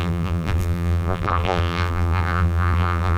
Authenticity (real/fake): fake